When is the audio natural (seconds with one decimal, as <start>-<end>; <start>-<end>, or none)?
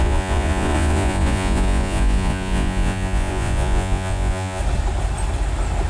4.6-5.9